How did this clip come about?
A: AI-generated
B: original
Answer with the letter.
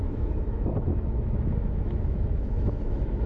A